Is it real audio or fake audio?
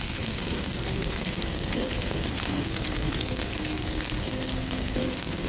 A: fake